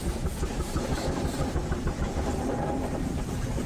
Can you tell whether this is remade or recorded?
remade